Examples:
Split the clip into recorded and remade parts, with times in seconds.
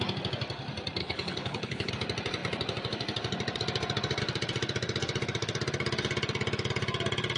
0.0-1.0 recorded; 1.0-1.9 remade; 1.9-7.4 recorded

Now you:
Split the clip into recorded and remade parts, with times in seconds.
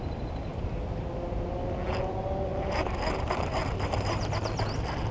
0.0-5.1 recorded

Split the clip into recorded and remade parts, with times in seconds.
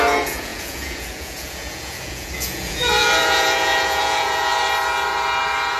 0.0-4.5 remade; 4.5-5.8 recorded